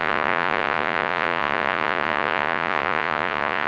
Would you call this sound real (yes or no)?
no